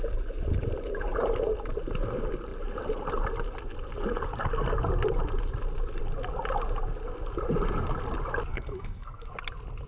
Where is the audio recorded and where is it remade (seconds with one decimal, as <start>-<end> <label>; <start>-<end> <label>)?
0.0-8.5 recorded; 8.5-9.3 remade; 9.3-9.9 recorded